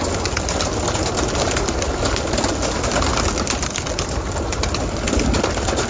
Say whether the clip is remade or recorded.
recorded